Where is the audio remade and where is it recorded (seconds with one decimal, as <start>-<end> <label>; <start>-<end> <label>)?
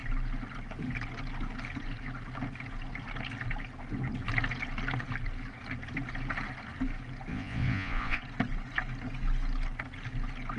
0.0-7.3 recorded; 7.3-8.2 remade; 8.2-10.6 recorded